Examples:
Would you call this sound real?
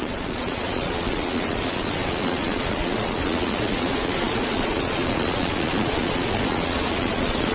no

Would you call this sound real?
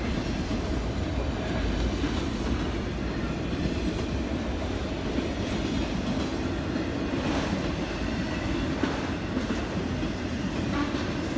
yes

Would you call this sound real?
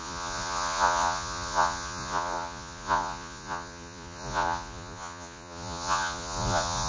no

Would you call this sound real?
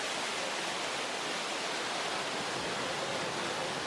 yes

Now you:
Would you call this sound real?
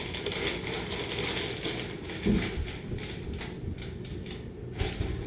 yes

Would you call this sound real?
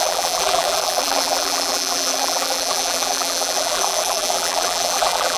no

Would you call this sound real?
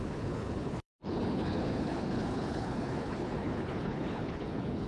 no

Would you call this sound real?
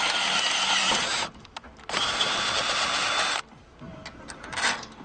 yes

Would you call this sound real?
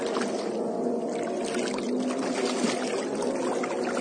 yes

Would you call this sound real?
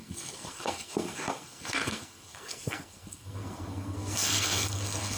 no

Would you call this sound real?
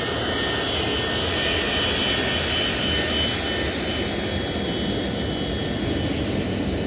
yes